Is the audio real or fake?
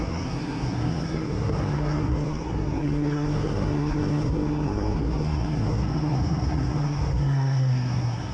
fake